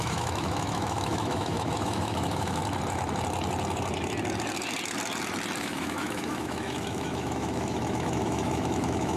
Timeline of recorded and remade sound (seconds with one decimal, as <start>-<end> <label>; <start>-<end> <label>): 0.0-2.6 remade; 2.6-5.6 recorded; 5.6-9.2 remade